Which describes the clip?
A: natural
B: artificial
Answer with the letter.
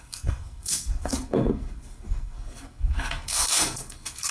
B